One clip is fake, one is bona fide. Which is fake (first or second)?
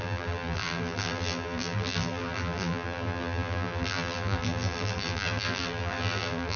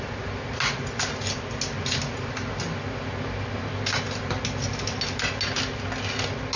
first